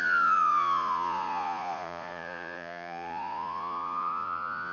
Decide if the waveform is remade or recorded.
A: remade